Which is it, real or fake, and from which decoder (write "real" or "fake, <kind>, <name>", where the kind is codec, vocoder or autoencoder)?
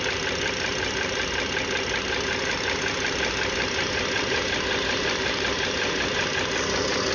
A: real